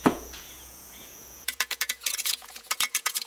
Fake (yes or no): yes